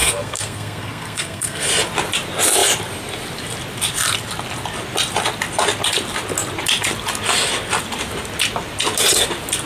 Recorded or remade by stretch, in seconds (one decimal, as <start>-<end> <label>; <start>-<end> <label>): 0.0-1.7 remade; 1.7-9.7 recorded